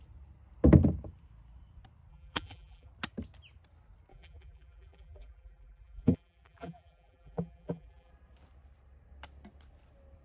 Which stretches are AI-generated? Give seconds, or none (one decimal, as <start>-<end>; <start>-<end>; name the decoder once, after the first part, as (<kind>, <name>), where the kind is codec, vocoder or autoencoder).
2.1-2.9 (vocoder, BigVGAN v2); 4.1-8.1